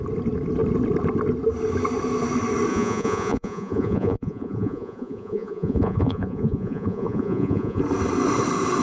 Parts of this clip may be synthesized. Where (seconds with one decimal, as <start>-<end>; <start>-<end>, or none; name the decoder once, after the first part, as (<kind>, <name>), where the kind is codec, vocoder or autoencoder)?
2.7-7.8 (vocoder, Vocos)